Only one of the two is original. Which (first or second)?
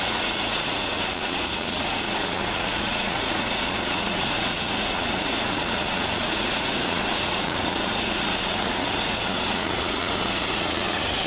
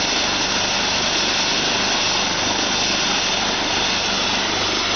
second